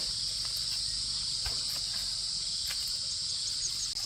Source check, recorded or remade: recorded